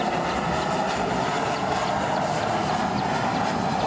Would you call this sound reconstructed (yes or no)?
no